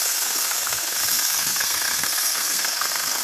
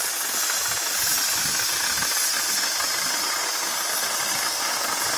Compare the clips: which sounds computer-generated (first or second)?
first